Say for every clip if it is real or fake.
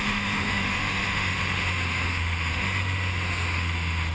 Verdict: fake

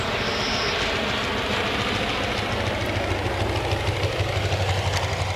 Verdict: real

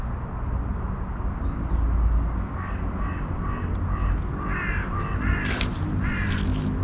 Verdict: real